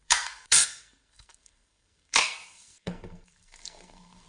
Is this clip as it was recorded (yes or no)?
no